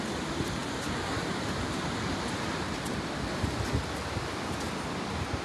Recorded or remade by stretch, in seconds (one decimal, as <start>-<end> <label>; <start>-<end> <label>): 0.0-5.4 recorded